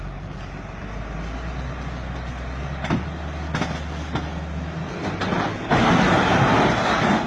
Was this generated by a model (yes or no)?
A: no